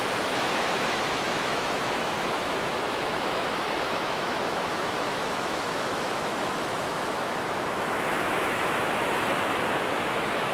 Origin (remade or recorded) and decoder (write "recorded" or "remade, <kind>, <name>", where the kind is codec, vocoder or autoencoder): remade, autoencoder, DAC-VAE